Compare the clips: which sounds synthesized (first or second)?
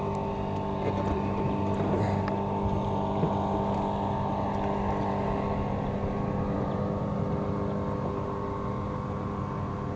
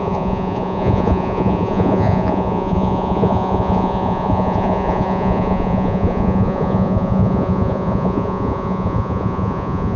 second